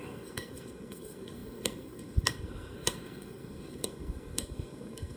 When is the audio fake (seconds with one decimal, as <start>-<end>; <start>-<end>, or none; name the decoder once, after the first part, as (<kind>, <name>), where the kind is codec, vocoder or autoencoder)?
0.0-5.2 (codec, SNAC)